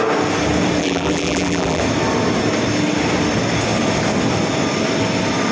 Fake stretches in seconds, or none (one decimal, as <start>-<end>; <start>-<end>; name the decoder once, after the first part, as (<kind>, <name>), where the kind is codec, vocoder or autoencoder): 0.8-1.8 (vocoder, BigVGAN v2)